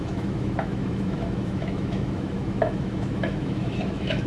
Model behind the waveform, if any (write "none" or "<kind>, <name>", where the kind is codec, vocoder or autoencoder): autoencoder, DAC-VAE